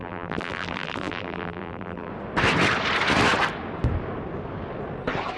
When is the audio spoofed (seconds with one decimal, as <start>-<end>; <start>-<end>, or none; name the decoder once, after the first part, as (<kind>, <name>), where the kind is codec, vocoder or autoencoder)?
0.0-2.1 (vocoder, BigVGAN v2)